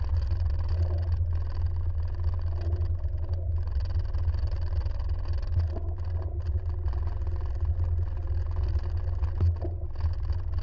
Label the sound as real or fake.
real